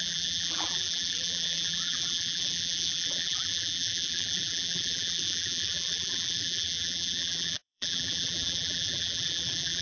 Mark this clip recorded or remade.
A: remade